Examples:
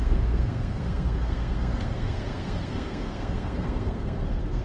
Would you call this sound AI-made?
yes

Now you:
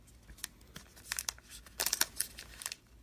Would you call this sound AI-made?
no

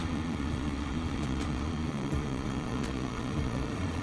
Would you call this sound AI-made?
yes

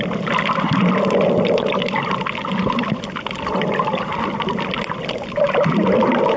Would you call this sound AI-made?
yes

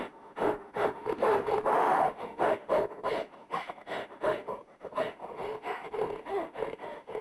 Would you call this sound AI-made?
yes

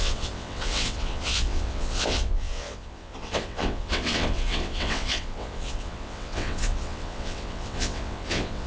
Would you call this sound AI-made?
yes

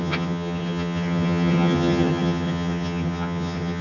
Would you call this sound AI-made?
yes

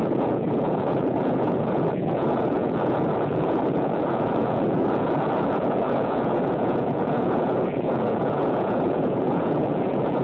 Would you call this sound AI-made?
yes